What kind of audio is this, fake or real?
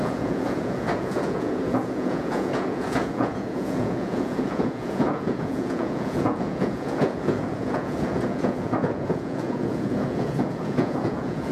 fake